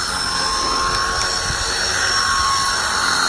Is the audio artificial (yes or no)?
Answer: no